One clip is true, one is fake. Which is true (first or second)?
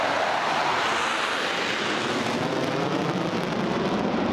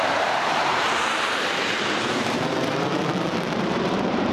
first